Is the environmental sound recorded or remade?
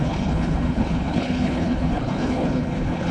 remade